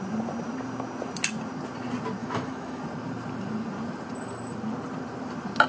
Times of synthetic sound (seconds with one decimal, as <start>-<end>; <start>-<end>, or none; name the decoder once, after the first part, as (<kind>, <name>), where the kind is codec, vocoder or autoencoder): 2.2-2.8 (autoencoder, DAC-VAE)